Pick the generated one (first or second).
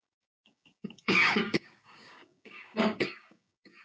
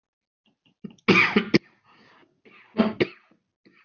first